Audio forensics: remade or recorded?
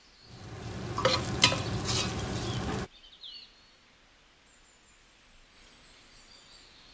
recorded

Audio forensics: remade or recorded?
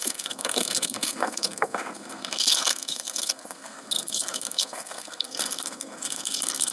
remade